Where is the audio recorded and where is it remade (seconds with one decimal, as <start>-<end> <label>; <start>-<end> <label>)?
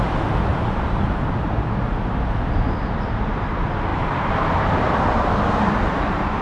0.0-0.5 recorded; 0.5-1.8 remade; 1.8-3.9 recorded; 3.9-5.7 remade; 5.7-6.4 recorded